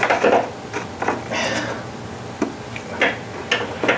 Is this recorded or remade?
recorded